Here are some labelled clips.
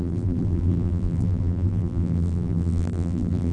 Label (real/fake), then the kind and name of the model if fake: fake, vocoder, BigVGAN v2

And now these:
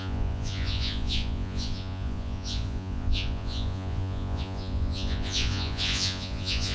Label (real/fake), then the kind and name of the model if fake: fake, vocoder, Vocos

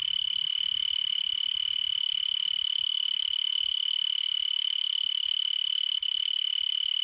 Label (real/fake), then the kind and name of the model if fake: real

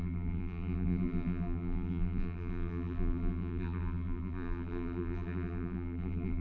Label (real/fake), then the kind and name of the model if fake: fake, vocoder, BigVGAN v2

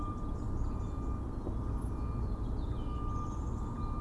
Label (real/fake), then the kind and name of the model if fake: real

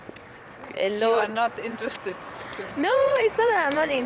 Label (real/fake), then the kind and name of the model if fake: fake, vocoder, WaveNeXt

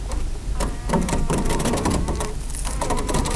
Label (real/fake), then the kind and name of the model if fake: fake, vocoder, BigVGAN v2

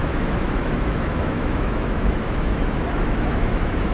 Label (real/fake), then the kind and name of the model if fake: fake, autoencoder, DAC-VAE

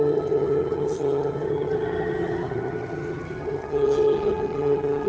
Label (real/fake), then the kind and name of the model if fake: fake, vocoder, HiFi-GAN